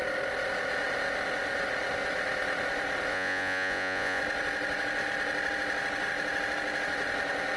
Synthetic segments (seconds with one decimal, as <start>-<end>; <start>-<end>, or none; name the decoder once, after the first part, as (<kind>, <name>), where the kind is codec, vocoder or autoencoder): 3.1-4.2 (vocoder, Vocos)